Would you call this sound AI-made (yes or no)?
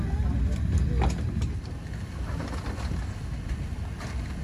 no